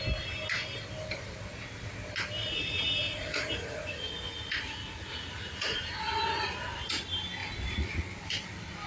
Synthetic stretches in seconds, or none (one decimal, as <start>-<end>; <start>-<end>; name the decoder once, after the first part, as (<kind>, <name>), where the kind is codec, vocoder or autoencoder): 2.4-7.0 (vocoder, Vocos); 7.4-8.0

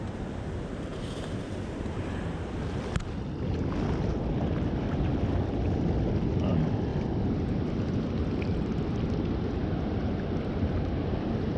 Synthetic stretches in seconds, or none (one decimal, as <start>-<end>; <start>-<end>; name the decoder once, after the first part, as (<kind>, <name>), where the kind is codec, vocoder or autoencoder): none

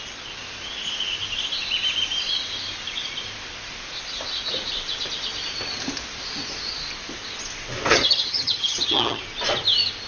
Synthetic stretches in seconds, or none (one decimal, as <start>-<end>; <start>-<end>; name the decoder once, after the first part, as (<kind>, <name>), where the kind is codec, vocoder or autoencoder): 7.9-9.2 (vocoder, HiFi-GAN)

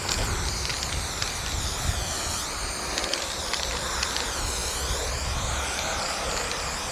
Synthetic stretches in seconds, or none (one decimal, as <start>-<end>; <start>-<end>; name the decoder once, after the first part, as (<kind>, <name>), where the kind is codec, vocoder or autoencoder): 1.2-2.4 (vocoder, BigVGAN v2); 3.0-3.9